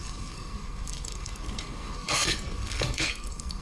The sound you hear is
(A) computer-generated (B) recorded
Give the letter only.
A